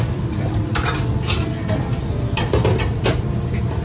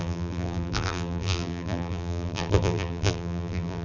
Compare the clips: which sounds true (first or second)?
first